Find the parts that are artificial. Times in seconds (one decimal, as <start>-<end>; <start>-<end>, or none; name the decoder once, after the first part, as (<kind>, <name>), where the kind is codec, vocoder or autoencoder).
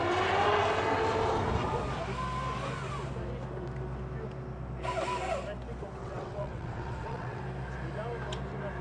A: 6.0-7.4 (vocoder, WaveNeXt)